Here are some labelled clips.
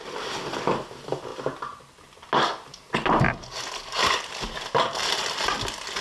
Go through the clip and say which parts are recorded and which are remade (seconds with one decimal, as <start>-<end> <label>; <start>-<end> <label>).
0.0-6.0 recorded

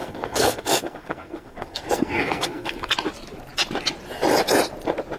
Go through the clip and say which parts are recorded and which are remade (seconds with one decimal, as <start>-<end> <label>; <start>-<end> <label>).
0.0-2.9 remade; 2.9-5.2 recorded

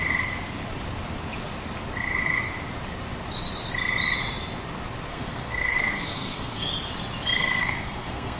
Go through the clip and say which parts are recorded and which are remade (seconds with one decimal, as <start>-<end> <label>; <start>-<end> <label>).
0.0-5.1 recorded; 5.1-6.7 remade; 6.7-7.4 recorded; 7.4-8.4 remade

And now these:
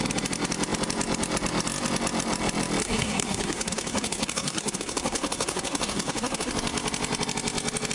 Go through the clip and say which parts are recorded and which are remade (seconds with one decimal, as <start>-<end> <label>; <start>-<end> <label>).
0.0-2.8 recorded; 2.8-6.5 remade; 6.5-7.9 recorded

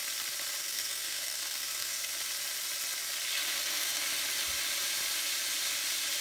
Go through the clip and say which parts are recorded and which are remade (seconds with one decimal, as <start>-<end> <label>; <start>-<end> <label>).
0.0-0.6 recorded; 0.6-2.1 remade; 2.1-3.5 recorded; 3.5-4.0 remade; 4.0-6.2 recorded